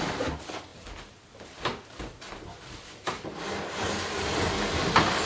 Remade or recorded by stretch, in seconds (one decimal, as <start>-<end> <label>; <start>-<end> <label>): 0.0-5.3 recorded